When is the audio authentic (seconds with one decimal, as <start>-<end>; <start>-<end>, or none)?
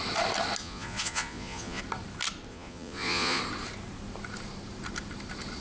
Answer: 0.0-0.6; 1.8-2.5; 3.4-5.6